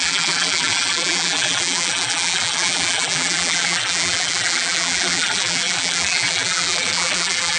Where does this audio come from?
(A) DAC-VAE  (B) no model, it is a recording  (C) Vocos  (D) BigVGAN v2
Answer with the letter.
D